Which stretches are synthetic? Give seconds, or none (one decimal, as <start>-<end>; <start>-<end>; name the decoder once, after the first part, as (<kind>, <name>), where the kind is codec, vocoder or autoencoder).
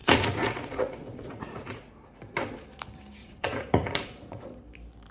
0.0-1.9 (vocoder, Vocos); 3.2-4.4